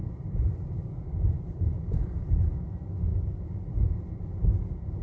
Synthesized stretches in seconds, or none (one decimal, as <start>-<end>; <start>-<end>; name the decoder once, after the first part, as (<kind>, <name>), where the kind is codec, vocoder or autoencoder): 0.0-2.6 (vocoder, BigVGAN v2)